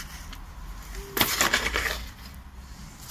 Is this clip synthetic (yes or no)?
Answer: no